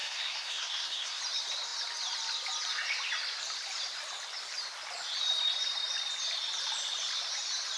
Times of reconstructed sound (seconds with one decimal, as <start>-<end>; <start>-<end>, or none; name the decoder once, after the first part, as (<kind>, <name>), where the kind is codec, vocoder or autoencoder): 0.0-1.2 (codec, SNAC)